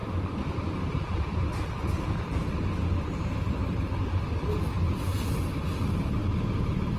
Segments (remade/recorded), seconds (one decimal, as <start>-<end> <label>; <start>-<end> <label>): 0.0-5.1 recorded; 5.1-5.8 remade; 5.8-6.2 recorded; 6.2-7.0 remade